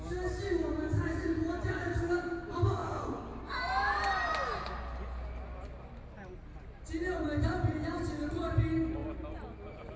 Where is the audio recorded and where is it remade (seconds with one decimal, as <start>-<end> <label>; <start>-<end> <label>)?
0.0-10.0 recorded